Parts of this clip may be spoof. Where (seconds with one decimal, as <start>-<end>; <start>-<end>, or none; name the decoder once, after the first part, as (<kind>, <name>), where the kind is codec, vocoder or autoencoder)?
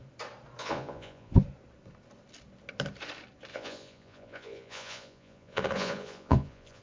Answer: 0.6-1.3 (vocoder, Vocos); 3.5-6.8